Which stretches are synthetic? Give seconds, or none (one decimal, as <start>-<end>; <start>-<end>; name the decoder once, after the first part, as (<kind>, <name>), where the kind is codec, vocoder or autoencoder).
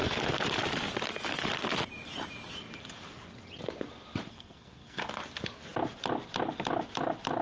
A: 4.3-5.0 (codec, SNAC)